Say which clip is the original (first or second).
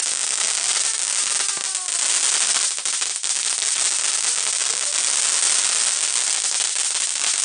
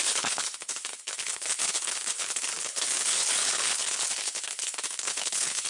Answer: first